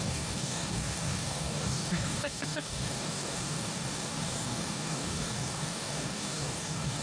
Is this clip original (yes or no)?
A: no